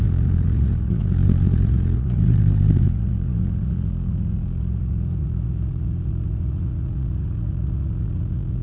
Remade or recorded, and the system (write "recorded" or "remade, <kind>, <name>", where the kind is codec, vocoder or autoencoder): remade, vocoder, Vocos